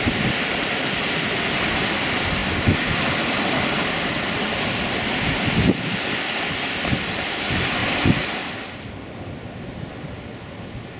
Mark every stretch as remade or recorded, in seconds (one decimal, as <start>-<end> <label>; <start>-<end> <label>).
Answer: 0.0-11.0 recorded

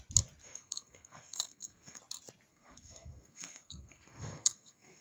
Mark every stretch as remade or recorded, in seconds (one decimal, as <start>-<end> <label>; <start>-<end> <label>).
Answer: 0.0-0.4 recorded; 0.4-2.0 remade; 2.0-2.5 recorded; 2.5-5.0 remade

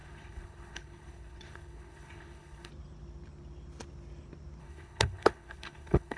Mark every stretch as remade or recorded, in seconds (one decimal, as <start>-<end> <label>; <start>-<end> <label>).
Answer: 0.0-2.7 remade; 2.7-4.6 recorded; 4.6-6.2 remade